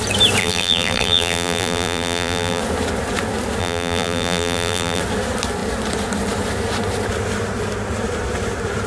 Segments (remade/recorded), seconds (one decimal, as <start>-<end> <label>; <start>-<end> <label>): 0.0-0.4 recorded; 0.4-2.6 remade; 2.6-3.6 recorded; 3.6-5.0 remade; 5.0-8.9 recorded